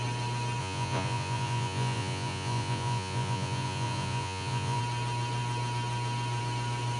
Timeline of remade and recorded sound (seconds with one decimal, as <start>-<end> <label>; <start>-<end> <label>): 0.0-0.6 recorded; 0.6-4.8 remade; 4.8-7.0 recorded